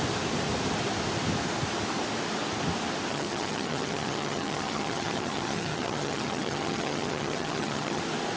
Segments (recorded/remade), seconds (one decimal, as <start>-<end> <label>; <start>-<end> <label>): 0.0-3.1 recorded; 3.1-8.0 remade; 8.0-8.4 recorded